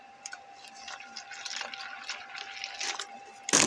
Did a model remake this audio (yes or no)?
no